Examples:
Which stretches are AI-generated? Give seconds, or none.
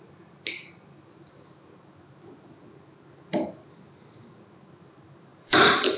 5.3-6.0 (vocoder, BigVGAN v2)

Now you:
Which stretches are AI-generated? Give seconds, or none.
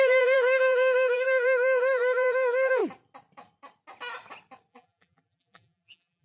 0.0-2.8 (vocoder, BigVGAN v2); 4.7-6.2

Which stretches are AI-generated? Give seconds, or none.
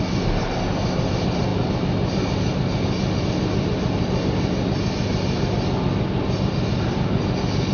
none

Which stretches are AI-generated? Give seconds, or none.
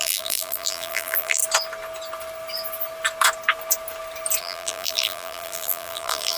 0.0-1.4 (vocoder, BigVGAN v2); 4.4-6.4